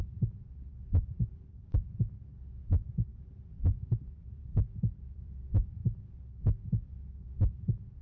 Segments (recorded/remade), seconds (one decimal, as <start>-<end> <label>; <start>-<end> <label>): 0.0-1.1 recorded; 1.1-5.8 remade; 5.8-8.0 recorded

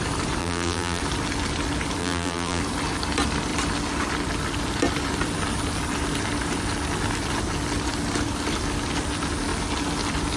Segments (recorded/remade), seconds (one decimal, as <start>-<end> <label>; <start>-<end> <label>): 0.0-0.4 recorded; 0.4-1.0 remade; 1.0-2.0 recorded; 2.0-2.6 remade; 2.6-10.4 recorded

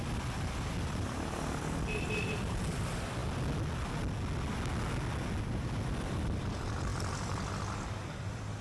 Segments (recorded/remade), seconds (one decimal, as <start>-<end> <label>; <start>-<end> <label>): 0.0-3.2 remade; 3.2-5.4 recorded; 5.4-6.9 remade; 6.9-7.5 recorded; 7.5-8.6 remade

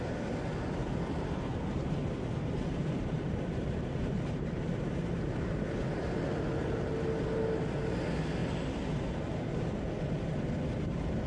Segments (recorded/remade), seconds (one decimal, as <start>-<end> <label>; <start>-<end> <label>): 0.0-0.8 recorded; 0.8-5.4 remade; 5.4-11.3 recorded

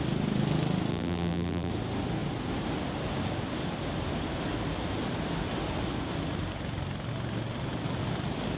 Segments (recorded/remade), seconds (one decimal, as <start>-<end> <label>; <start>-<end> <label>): 0.0-0.9 recorded; 0.9-1.7 remade; 1.7-8.6 recorded